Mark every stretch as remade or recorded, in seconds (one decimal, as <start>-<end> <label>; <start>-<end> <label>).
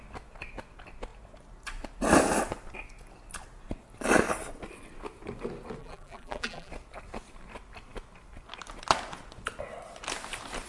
0.0-5.8 recorded; 5.8-6.7 remade; 6.7-10.7 recorded